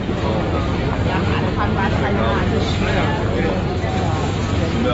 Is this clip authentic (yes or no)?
yes